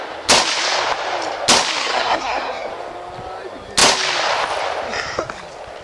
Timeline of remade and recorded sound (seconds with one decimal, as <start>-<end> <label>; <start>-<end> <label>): 0.0-1.8 recorded; 1.8-2.7 remade; 2.7-5.8 recorded